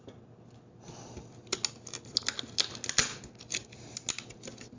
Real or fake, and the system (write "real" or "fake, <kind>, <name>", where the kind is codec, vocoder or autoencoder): real